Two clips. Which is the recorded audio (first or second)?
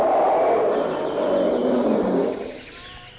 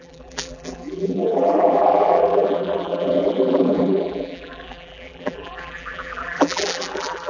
first